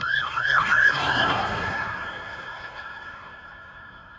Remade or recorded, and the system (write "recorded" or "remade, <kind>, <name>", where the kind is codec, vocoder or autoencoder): remade, codec, SNAC